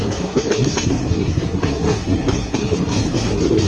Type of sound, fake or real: fake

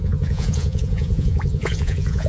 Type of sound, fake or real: fake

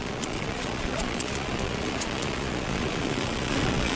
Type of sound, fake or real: fake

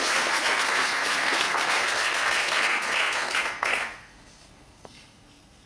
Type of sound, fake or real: fake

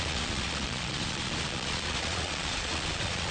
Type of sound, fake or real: fake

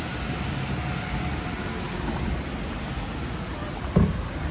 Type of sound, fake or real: real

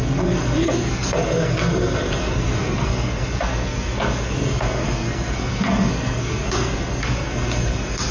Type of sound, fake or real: fake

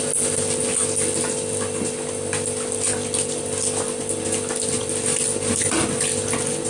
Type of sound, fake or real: real